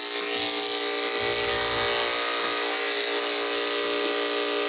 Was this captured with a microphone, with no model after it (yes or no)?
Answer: yes